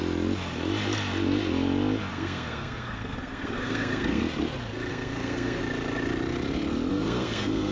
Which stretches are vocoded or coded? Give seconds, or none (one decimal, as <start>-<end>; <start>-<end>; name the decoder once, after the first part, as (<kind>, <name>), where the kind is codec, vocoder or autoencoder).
2.1-4.2 (codec, SNAC); 4.9-5.6; 6.9-7.7

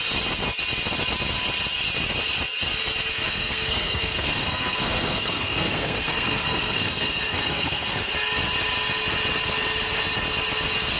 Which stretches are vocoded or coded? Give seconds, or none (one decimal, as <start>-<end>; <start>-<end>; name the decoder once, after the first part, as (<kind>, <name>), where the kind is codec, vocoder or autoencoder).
3.1-8.1 (codec, SNAC)

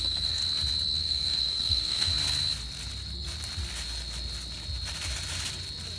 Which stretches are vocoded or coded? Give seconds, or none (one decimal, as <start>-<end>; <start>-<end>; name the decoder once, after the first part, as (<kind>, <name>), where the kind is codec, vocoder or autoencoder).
0.0-0.4 (codec, SNAC); 1.0-2.1

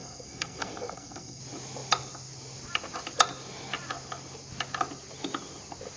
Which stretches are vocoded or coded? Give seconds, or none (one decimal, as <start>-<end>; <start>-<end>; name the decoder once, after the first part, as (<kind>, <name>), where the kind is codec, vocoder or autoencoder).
0.0-1.4 (codec, SNAC)

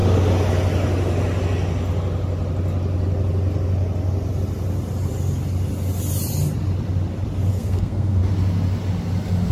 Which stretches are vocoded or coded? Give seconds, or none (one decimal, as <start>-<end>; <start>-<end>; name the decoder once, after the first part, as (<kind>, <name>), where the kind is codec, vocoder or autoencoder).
7.5-8.2 (codec, SNAC)

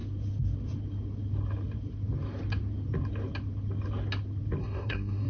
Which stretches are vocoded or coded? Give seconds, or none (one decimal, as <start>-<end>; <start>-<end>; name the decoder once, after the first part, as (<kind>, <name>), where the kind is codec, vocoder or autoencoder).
4.6-5.3 (codec, SNAC)

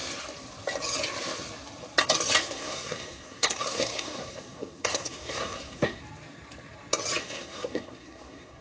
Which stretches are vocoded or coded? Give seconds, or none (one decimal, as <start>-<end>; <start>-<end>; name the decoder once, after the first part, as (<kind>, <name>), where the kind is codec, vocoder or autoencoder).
2.4-6.0 (codec, SNAC); 7.2-8.6

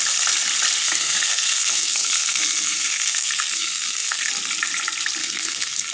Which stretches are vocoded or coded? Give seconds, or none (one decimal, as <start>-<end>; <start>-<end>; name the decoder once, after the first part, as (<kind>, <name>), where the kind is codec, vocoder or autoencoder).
0.8-4.3 (codec, SNAC); 5.2-5.9